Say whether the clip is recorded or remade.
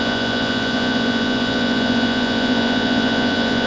remade